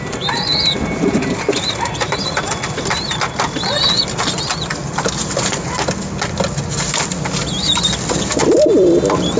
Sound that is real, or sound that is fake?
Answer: real